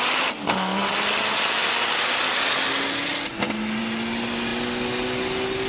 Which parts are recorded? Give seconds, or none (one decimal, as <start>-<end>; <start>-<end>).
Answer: 0.0-5.7